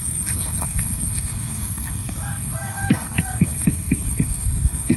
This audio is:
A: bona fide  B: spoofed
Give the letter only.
B